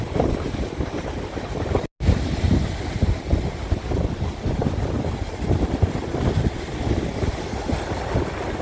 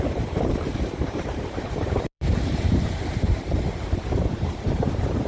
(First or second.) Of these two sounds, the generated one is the second